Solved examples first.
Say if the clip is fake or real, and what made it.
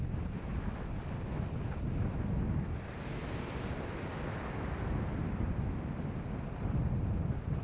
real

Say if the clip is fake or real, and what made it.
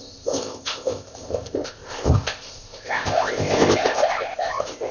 fake, codec, ZipCodec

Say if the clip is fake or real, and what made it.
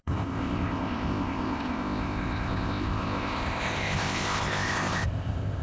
fake, codec, ZipCodec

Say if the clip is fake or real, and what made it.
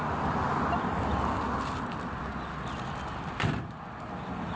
real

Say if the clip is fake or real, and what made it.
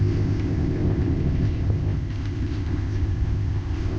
fake, codec, ZipCodec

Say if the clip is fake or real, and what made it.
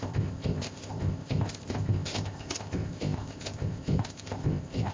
fake, codec, ZipCodec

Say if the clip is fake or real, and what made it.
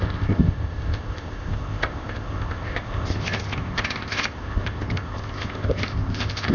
fake, codec, ZipCodec